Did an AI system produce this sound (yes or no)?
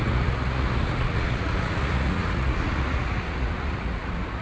yes